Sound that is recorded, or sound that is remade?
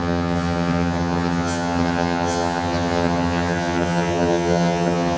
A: remade